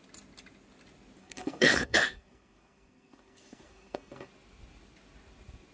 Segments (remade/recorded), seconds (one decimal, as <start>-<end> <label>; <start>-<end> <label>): 0.0-1.2 recorded; 1.2-4.3 remade; 4.3-5.7 recorded